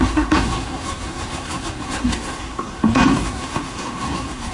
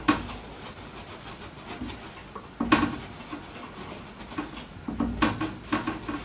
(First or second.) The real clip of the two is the second